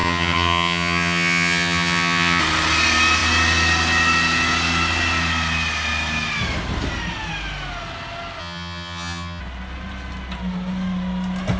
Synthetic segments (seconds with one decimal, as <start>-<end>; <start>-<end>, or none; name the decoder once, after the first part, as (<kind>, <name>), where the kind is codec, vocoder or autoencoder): 0.0-2.4 (vocoder, HiFi-GAN); 8.4-9.4